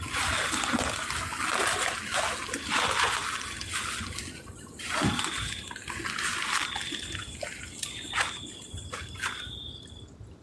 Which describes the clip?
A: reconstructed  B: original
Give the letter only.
B